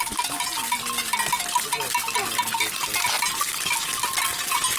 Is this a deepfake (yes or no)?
no